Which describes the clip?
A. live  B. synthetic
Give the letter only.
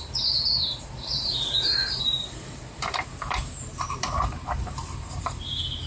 B